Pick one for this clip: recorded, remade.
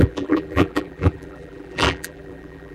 remade